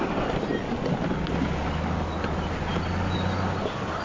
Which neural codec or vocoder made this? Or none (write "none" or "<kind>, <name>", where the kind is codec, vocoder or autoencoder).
none